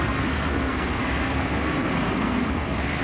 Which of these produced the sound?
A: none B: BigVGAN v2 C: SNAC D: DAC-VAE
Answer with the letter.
C